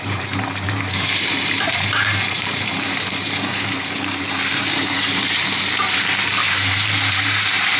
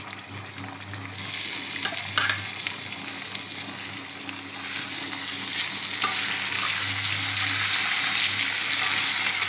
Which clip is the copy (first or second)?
first